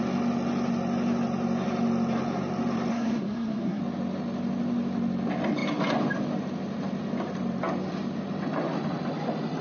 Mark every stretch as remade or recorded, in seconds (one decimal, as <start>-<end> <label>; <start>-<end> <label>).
0.0-2.9 recorded; 2.9-3.8 remade; 3.8-9.6 recorded